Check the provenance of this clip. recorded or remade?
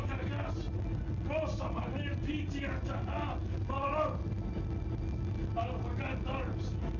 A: recorded